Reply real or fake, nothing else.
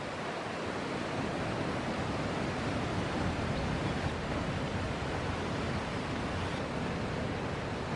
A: real